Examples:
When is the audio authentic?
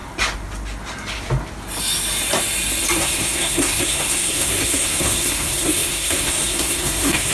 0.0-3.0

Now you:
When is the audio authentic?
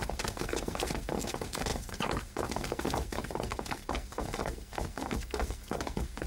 none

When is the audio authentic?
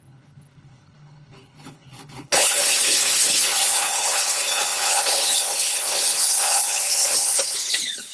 none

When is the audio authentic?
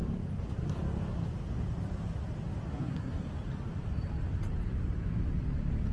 0.0-2.7; 3.3-5.9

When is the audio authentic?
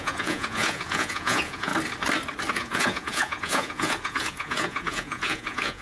1.7-2.5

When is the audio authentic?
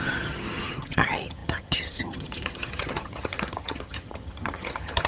none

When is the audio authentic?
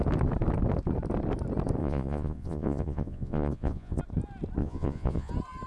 0.0-1.8; 4.0-4.6; 5.3-5.7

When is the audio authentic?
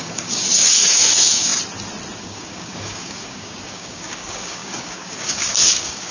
1.5-2.2